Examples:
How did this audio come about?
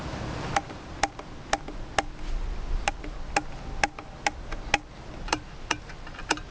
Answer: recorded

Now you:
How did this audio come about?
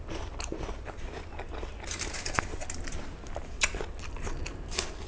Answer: recorded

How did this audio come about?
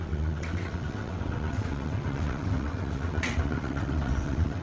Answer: remade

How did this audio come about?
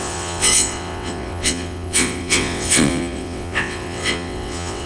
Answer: remade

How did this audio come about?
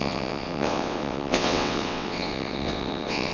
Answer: remade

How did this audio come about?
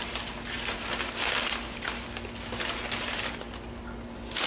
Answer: recorded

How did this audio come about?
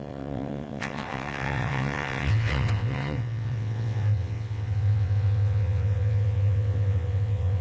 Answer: remade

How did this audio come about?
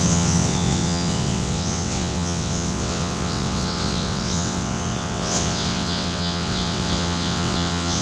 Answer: remade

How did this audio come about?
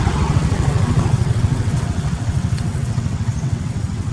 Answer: remade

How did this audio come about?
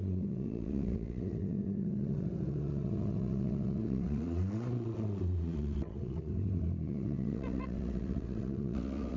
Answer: remade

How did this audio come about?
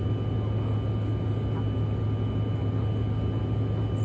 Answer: recorded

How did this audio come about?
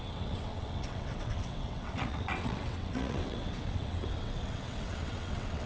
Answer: remade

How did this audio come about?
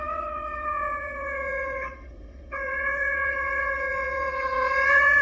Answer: remade